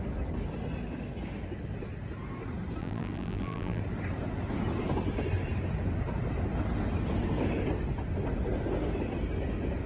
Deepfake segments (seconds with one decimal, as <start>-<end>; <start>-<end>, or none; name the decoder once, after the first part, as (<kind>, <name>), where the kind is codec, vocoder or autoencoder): 2.8-3.8 (vocoder, BigVGAN v2)